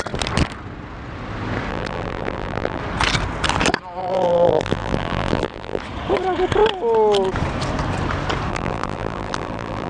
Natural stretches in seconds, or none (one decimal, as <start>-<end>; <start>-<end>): 0.0-1.7; 2.8-4.0; 5.8-8.5